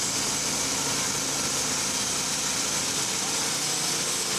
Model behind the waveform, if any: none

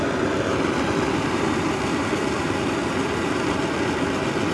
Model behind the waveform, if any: vocoder, BigVGAN v2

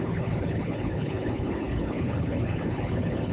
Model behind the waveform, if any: codec, HILCodec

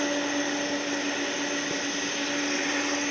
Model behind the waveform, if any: none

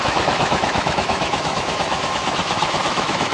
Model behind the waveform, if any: autoencoder, DAC-VAE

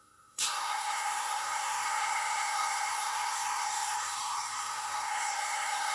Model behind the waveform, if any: codec, SNAC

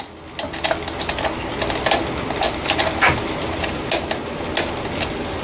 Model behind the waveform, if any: none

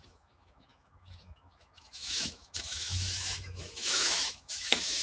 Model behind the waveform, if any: autoencoder, DAC-VAE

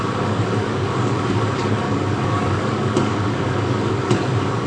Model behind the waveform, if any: codec, DAC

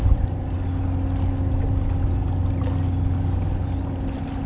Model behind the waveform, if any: none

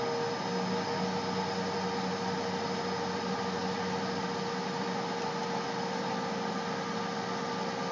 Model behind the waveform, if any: none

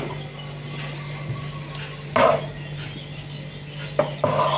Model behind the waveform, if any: none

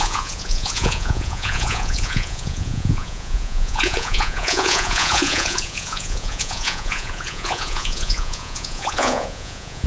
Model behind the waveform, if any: vocoder, Vocos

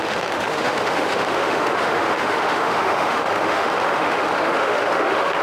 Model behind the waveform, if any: autoencoder, DAC-VAE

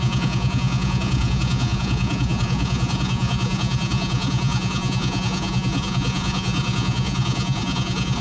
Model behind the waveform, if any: vocoder, Vocos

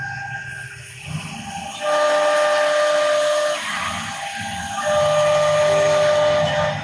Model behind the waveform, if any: none